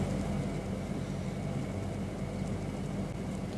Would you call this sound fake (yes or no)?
no